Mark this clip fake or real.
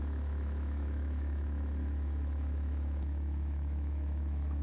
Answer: fake